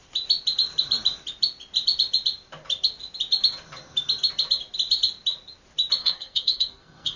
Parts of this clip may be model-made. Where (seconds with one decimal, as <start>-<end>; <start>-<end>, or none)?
6.0-7.2